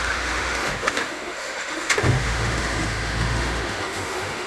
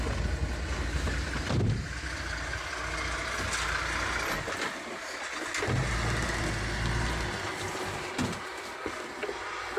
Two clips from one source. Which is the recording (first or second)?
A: second